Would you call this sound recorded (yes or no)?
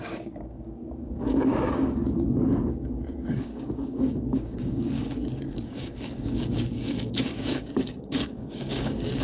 no